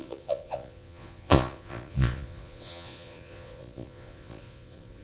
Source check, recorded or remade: remade